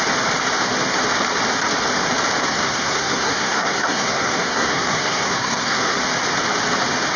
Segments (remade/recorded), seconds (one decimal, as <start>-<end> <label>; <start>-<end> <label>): 0.0-2.4 recorded; 2.4-6.0 remade; 6.0-7.2 recorded